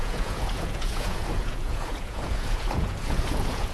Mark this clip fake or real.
fake